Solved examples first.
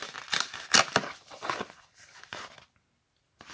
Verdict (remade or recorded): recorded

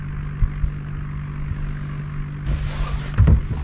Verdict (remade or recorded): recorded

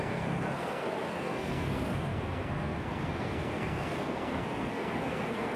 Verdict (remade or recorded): remade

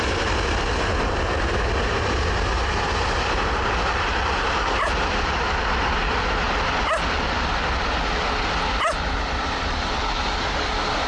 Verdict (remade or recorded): recorded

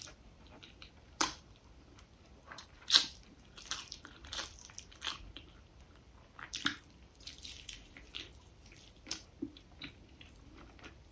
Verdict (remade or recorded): remade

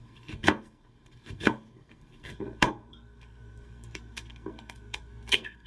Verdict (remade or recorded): remade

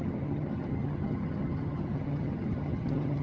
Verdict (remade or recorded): remade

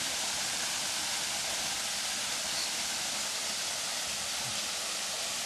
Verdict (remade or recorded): recorded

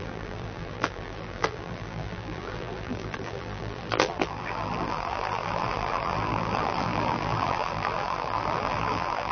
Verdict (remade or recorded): remade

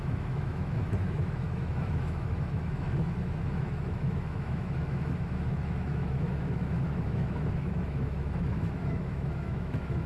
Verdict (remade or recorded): remade